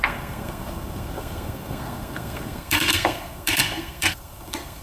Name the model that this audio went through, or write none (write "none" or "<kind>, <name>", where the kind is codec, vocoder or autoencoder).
codec, SNAC